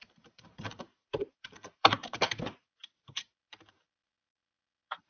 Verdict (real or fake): fake